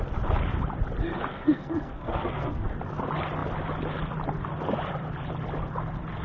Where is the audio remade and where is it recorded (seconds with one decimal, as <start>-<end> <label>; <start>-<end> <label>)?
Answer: 0.0-1.3 recorded; 1.3-2.7 remade; 2.7-6.2 recorded